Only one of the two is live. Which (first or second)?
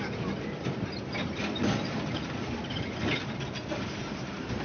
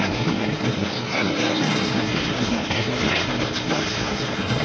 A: first